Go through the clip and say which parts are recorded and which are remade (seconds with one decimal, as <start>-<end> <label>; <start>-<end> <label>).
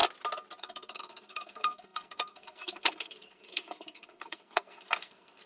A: 0.0-0.6 recorded; 0.6-5.5 remade